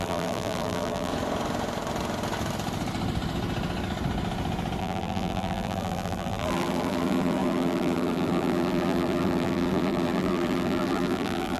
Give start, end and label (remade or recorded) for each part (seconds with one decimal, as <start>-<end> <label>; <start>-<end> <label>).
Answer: 0.0-1.1 remade; 1.1-4.8 recorded; 4.8-11.6 remade